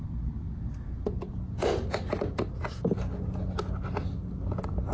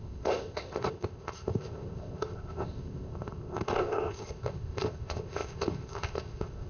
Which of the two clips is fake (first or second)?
second